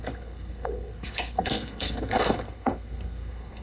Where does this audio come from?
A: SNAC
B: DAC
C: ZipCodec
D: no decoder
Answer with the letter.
A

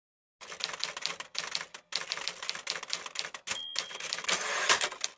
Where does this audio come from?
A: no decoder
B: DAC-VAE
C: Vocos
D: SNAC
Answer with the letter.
A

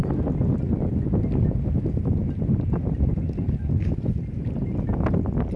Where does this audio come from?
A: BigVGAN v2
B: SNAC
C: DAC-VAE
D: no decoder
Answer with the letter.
D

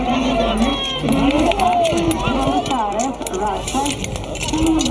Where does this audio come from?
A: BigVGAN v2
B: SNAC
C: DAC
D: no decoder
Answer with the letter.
D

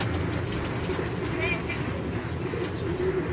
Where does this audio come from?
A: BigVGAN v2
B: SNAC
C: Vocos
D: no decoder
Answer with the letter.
D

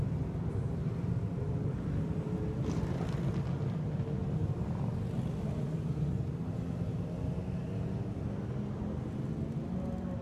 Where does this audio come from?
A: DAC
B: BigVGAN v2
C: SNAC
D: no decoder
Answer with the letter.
D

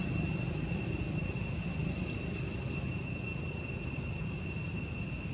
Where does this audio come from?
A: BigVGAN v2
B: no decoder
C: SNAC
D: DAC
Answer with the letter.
B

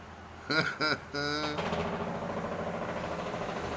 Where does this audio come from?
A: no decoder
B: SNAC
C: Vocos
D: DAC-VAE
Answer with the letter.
A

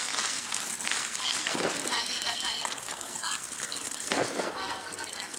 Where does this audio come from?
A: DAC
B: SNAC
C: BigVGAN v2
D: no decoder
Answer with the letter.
B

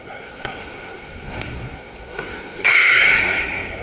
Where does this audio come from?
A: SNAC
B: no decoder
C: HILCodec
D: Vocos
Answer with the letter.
A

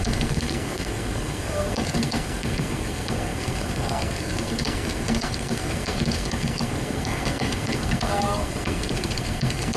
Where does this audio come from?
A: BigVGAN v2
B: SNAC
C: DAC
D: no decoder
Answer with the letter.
B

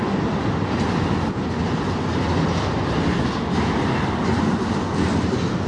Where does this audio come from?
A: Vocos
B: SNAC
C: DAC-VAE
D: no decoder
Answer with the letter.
D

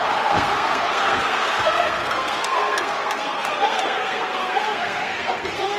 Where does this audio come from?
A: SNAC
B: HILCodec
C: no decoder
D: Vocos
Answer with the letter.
A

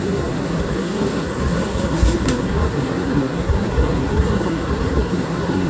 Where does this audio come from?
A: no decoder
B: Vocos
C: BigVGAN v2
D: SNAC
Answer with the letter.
D